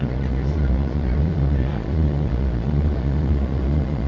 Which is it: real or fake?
fake